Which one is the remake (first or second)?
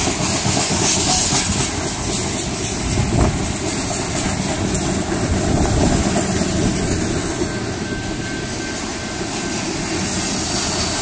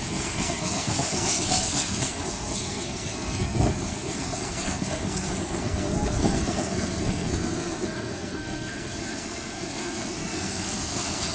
second